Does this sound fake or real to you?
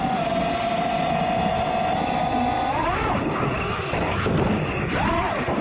real